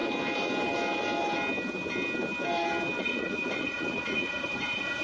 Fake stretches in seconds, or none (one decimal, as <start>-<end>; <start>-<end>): 3.0-5.0